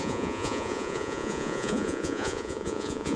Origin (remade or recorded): remade